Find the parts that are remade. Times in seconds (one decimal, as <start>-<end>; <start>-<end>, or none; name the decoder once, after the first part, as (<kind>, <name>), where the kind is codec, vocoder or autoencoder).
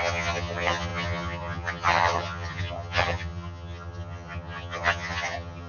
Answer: 0.0-5.7 (vocoder, HiFi-GAN)